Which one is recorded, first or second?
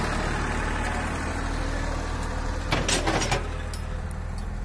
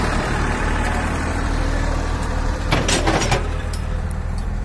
first